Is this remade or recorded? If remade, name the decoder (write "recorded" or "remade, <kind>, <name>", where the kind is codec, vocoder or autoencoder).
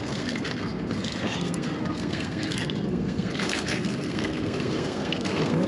remade, codec, SNAC